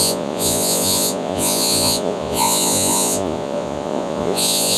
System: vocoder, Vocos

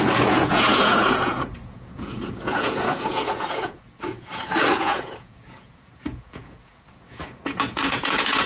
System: vocoder, Vocos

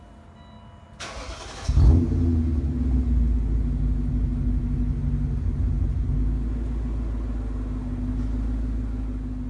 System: none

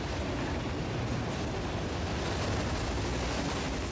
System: none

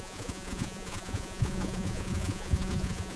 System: vocoder, Vocos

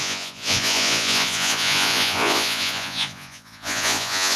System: vocoder, Vocos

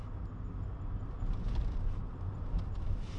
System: none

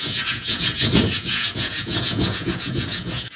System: vocoder, Vocos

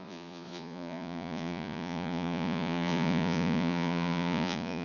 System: vocoder, Vocos